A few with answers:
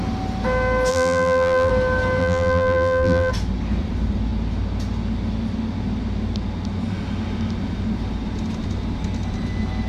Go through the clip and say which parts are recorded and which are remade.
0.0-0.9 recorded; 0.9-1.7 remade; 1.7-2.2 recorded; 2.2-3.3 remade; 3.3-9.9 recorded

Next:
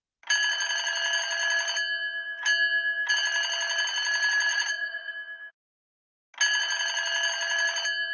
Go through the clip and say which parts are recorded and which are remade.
0.0-4.5 recorded; 4.5-5.1 remade; 5.1-8.1 recorded

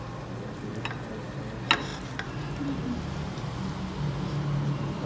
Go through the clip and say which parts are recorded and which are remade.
0.0-5.1 recorded